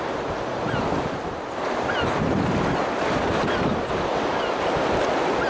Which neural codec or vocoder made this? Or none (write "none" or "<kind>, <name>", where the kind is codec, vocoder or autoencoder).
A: none